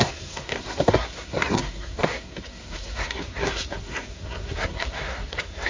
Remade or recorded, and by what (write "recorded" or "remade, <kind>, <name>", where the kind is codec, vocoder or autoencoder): remade, codec, SNAC